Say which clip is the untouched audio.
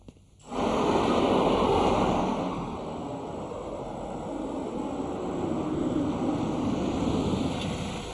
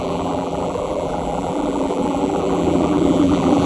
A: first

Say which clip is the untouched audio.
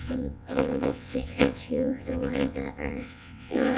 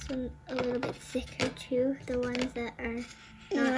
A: second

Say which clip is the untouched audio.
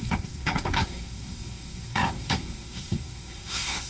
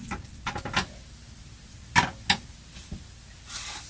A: second